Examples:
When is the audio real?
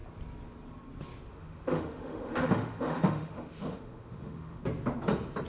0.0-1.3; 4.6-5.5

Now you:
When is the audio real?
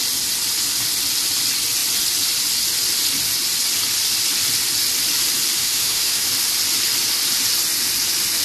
0.0-5.6; 6.3-8.4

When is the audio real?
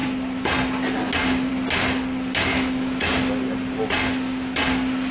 0.0-2.5; 3.1-5.1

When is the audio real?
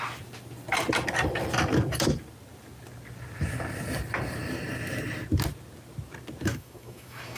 0.0-6.5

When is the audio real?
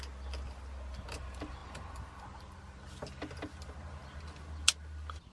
0.0-5.3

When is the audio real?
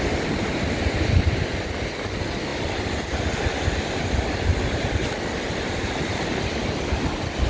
0.0-7.5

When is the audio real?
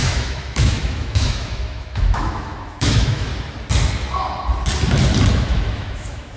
3.3-5.3